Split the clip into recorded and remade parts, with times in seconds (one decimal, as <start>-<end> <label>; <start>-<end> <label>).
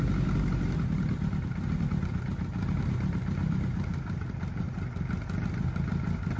0.0-6.4 recorded